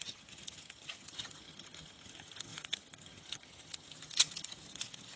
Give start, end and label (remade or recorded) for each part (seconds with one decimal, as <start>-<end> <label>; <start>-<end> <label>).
0.0-5.2 remade